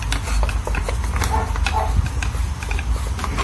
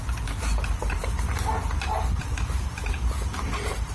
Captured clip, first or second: first